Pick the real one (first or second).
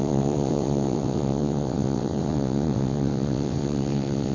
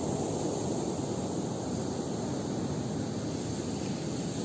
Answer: second